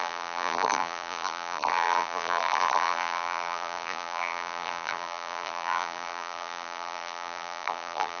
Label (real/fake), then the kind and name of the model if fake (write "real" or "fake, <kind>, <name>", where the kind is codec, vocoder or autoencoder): fake, vocoder, BigVGAN v2